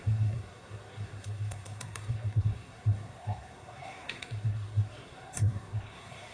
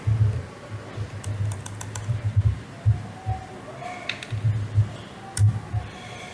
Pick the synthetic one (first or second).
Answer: first